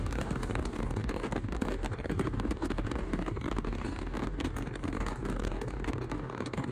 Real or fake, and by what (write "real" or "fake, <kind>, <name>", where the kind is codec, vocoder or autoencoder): fake, codec, DAC